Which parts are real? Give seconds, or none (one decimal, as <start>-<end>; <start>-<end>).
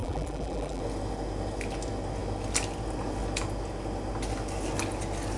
0.8-5.4